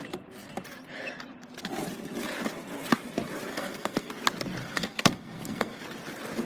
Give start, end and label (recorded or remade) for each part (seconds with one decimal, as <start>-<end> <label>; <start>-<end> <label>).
0.0-3.5 recorded; 3.5-4.1 remade; 4.1-4.6 recorded; 4.6-5.8 remade; 5.8-6.4 recorded